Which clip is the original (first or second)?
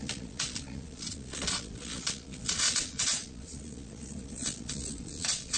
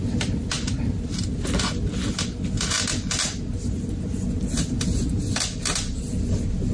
second